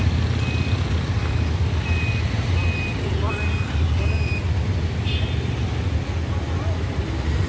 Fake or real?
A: real